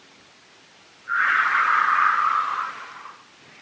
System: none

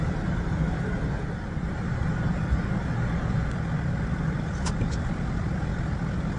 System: none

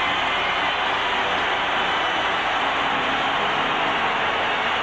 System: none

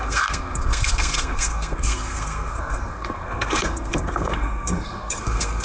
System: codec, SNAC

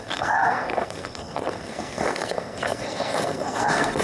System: codec, SNAC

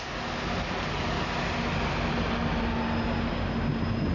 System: none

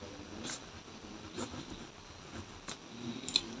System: none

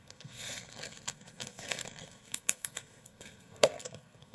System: codec, SNAC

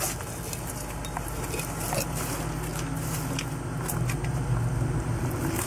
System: none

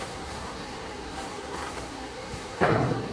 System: codec, SNAC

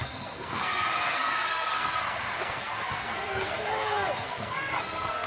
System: codec, SNAC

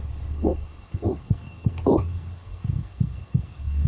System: codec, SNAC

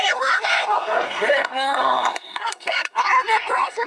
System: codec, SNAC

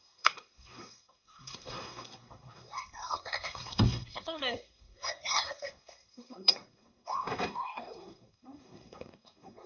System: codec, SNAC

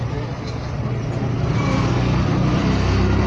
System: none